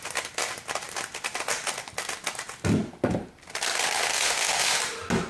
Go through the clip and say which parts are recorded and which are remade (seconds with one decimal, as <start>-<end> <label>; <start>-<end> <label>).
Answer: 0.0-4.1 recorded; 4.1-4.8 remade; 4.8-5.3 recorded